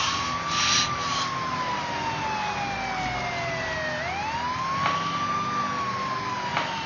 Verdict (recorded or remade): recorded